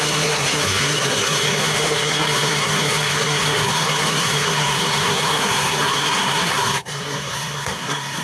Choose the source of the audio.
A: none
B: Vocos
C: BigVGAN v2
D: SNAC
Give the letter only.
D